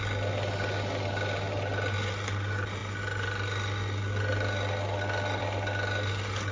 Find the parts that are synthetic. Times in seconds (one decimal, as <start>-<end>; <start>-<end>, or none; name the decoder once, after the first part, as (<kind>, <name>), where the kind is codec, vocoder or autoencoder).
none